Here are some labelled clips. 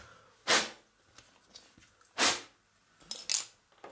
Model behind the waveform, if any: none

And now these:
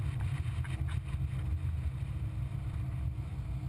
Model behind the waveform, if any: none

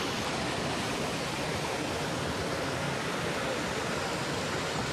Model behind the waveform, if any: none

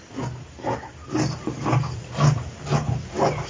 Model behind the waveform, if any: none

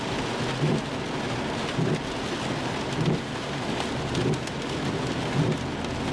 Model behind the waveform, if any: none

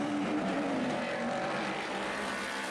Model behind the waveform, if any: vocoder, BigVGAN v2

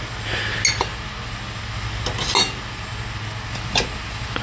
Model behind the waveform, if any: none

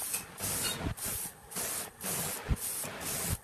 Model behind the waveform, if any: none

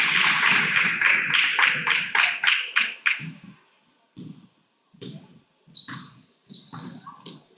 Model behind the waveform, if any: none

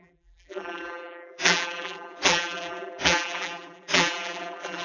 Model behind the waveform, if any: vocoder, BigVGAN v2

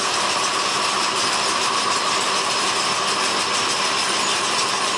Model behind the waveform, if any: none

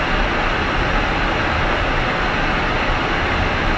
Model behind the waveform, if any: none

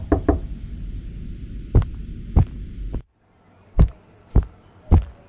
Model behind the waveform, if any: vocoder, BigVGAN v2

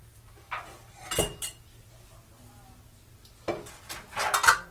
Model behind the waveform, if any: none